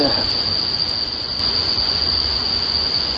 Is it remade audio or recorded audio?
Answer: remade